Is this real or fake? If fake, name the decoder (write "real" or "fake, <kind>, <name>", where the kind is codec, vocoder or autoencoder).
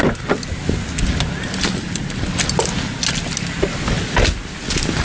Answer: real